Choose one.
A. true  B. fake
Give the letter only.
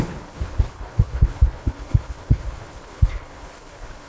B